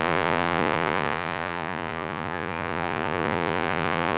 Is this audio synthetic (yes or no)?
yes